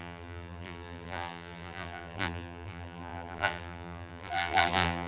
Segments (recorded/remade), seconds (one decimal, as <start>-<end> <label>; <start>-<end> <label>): 0.0-5.1 remade